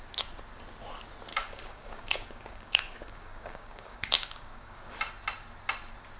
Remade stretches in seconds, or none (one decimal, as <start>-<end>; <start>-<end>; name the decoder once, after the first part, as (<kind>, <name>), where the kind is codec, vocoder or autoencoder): 1.3-5.0 (codec, DAC)